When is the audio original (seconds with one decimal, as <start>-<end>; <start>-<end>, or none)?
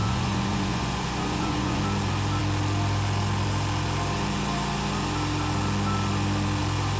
1.8-7.0